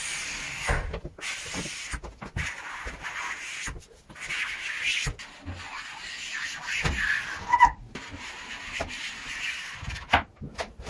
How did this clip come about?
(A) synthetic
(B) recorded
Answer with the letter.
B